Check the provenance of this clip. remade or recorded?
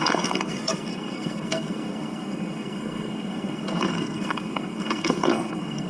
remade